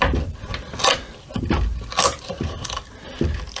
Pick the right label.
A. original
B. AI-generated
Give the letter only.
B